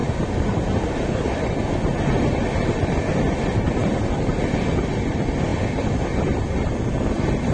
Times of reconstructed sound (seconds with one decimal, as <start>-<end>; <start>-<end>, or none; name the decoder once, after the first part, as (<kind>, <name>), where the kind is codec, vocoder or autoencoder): none